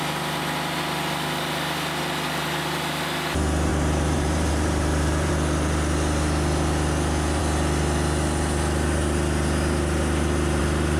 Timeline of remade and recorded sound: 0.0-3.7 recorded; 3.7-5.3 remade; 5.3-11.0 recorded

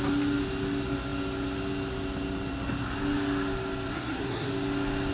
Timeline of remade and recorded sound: 0.0-3.9 recorded; 3.9-4.5 remade; 4.5-5.1 recorded

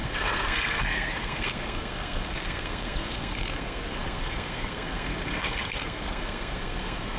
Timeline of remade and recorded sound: 0.0-7.2 remade

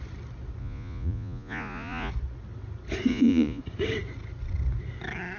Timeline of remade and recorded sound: 0.0-0.6 recorded; 0.6-2.1 remade; 2.1-3.1 recorded; 3.1-3.6 remade; 3.6-5.4 recorded

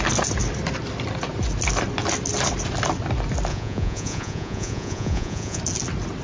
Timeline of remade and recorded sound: 0.0-3.5 recorded; 3.5-5.6 remade; 5.6-6.2 recorded

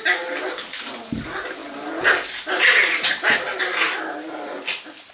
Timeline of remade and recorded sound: 0.0-5.1 recorded